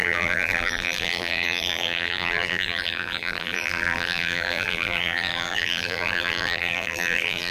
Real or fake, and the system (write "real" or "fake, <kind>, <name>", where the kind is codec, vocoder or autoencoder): fake, vocoder, BigVGAN v2